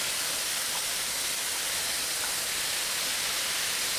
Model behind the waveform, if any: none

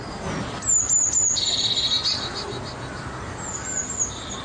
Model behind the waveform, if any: none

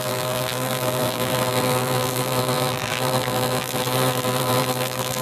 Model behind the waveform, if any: vocoder, BigVGAN v2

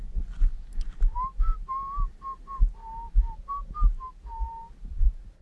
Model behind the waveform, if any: none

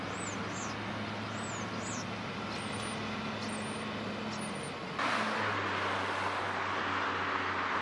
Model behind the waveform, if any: none